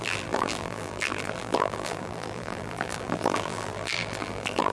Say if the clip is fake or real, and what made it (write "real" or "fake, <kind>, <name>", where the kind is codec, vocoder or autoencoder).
fake, vocoder, BigVGAN v2